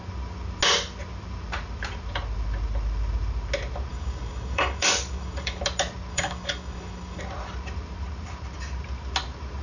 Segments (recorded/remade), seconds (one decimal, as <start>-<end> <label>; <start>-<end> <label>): 0.0-3.9 recorded; 3.9-5.6 remade; 5.6-6.1 recorded; 6.1-7.2 remade; 7.2-9.6 recorded